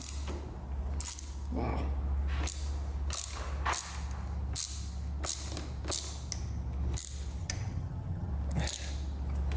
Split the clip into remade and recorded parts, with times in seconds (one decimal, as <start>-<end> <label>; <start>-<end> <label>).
0.0-7.4 recorded; 7.4-8.3 remade; 8.3-9.6 recorded